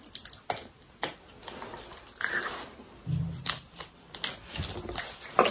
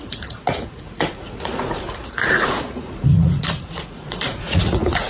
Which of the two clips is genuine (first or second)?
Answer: first